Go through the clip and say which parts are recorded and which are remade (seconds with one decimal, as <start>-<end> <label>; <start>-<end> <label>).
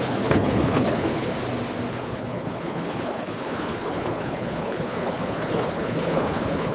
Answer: 0.0-1.3 remade; 1.3-1.9 recorded; 1.9-6.7 remade